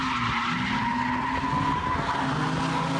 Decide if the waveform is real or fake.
real